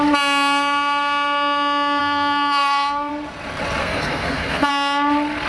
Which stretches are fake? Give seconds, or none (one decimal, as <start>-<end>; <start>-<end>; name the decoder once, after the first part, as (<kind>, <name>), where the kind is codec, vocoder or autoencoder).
2.0-3.1 (codec, SNAC); 3.8-4.7